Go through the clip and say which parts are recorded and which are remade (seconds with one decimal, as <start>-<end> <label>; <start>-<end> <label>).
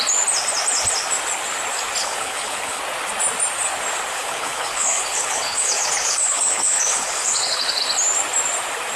0.0-2.0 recorded; 2.0-2.8 remade; 2.8-4.1 recorded; 4.1-7.8 remade; 7.8-9.0 recorded